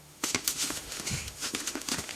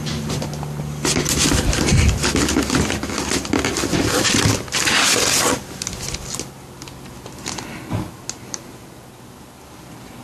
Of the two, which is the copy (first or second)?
first